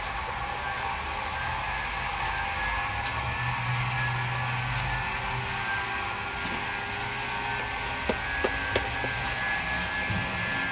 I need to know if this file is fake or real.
real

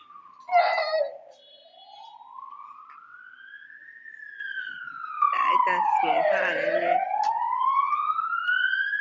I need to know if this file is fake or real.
real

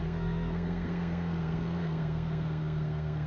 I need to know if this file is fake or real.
fake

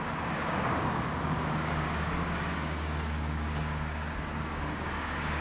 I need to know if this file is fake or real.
fake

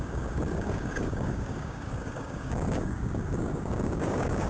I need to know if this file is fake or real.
fake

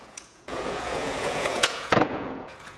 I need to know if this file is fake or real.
fake